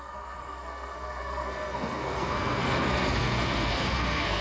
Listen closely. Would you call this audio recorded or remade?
remade